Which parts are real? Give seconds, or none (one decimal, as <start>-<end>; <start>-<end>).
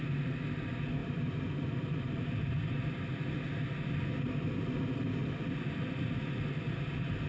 0.0-1.0; 2.5-5.2; 5.8-7.3